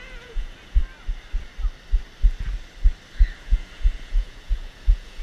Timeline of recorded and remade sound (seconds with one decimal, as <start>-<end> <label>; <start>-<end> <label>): 0.0-0.8 remade; 0.8-3.4 recorded; 3.4-5.2 remade